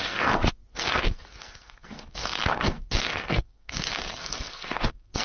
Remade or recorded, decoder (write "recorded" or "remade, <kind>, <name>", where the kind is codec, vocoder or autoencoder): remade, codec, SNAC